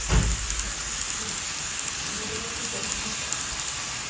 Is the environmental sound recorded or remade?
recorded